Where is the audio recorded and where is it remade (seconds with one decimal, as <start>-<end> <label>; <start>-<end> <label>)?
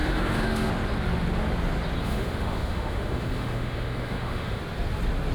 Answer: 0.0-0.7 remade; 0.7-2.0 recorded; 2.0-4.6 remade; 4.6-5.3 recorded